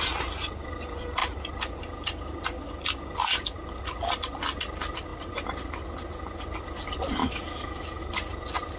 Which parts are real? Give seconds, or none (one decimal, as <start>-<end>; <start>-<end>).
0.0-7.2; 8.0-8.8